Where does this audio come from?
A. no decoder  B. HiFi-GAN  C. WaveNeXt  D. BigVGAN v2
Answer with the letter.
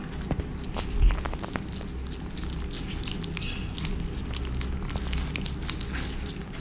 A